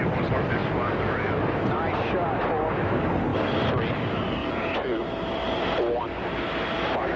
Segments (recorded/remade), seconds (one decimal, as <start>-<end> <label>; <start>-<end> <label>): 0.0-7.2 recorded